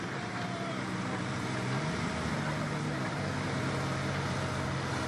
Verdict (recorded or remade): remade